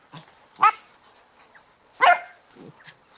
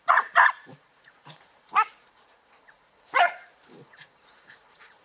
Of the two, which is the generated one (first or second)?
second